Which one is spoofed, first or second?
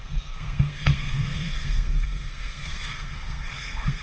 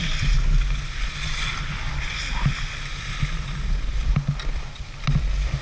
first